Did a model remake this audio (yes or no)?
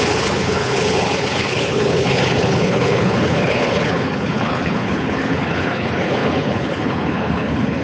yes